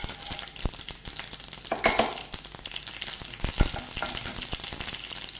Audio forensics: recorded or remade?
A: recorded